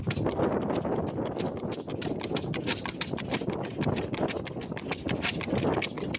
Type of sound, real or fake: real